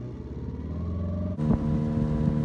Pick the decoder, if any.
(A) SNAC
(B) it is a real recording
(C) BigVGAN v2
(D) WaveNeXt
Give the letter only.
B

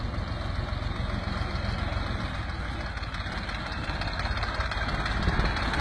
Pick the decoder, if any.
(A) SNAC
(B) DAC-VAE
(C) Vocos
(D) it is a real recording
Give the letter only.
D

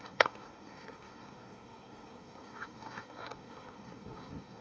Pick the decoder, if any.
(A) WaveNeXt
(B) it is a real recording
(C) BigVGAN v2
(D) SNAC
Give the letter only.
D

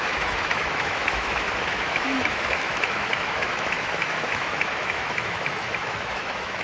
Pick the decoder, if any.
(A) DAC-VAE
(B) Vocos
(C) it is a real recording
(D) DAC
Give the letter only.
A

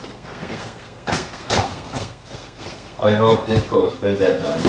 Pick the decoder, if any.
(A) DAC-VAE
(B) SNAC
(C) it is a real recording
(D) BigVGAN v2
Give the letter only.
B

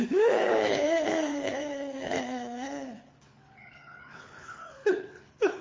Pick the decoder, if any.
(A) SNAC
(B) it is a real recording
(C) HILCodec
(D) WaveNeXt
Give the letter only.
C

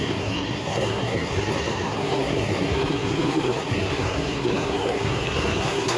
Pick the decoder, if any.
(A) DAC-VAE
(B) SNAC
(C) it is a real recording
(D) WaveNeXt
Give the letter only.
B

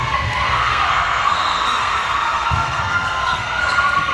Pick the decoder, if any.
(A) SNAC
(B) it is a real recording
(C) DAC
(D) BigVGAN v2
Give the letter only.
A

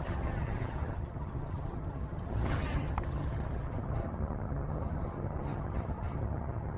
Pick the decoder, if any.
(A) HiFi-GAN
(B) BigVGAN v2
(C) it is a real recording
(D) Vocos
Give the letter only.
A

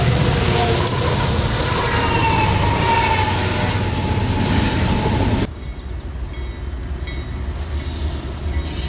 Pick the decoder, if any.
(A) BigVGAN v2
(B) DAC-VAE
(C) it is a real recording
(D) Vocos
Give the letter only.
C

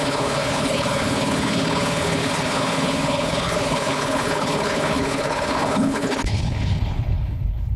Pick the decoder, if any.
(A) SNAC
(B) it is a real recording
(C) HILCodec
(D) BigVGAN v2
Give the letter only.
C